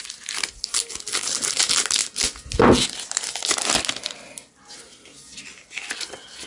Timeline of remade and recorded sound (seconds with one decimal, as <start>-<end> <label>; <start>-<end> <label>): 0.0-6.5 recorded